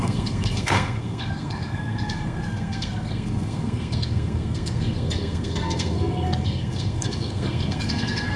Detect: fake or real fake